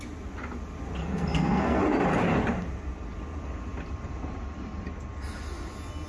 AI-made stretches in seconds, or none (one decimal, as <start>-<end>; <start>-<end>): 1.0-1.8